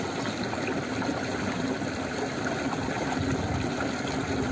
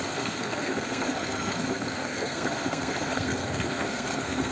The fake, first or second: second